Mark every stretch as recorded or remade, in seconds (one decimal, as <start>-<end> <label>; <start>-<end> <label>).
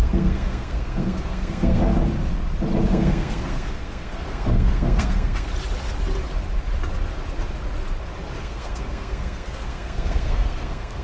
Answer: 0.0-1.8 remade; 1.8-2.9 recorded; 2.9-5.5 remade; 5.5-8.4 recorded; 8.4-11.0 remade